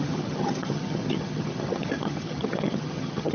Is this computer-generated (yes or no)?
yes